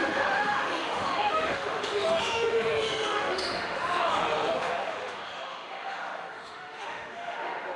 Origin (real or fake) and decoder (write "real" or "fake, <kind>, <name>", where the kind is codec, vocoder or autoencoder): fake, autoencoder, DAC-VAE